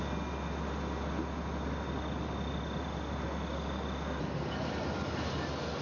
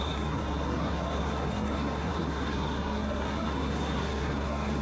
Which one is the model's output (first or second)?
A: second